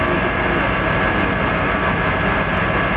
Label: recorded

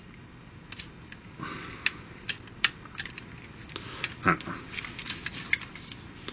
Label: recorded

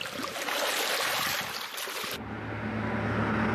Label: recorded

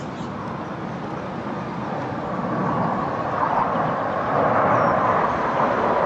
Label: recorded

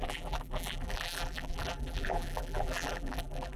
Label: remade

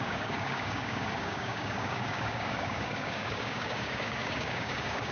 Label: remade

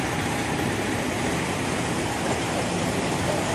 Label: remade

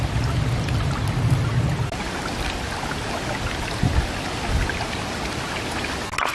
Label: recorded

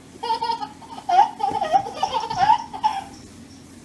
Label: recorded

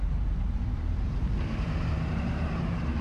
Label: remade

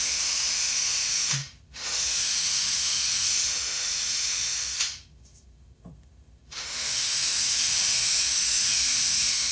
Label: remade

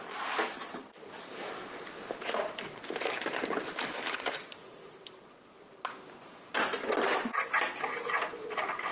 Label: recorded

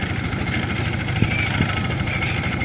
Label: recorded